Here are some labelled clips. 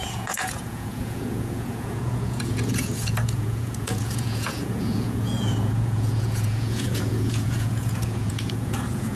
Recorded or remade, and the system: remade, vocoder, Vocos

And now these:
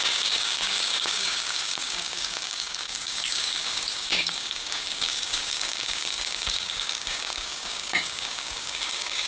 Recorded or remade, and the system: remade, codec, DAC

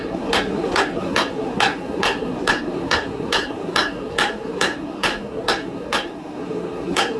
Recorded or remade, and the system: remade, codec, SNAC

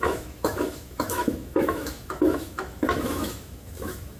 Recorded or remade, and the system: remade, autoencoder, DAC-VAE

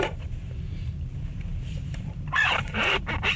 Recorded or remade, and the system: remade, vocoder, BigVGAN v2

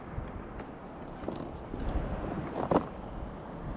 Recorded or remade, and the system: recorded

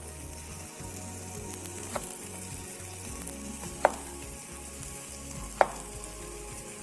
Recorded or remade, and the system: recorded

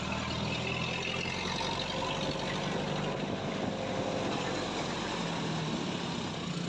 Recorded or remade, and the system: recorded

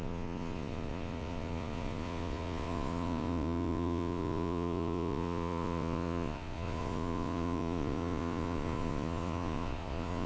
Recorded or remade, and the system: remade, vocoder, Vocos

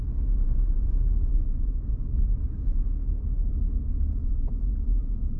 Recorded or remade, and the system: recorded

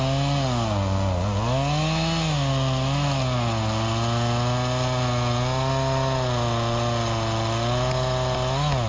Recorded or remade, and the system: recorded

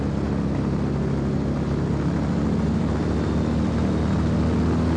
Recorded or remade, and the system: recorded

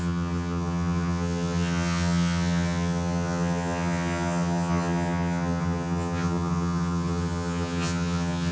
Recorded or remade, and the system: remade, vocoder, HiFi-GAN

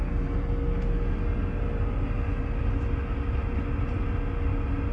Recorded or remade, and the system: recorded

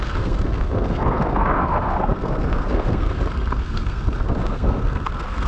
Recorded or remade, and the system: remade, codec, SNAC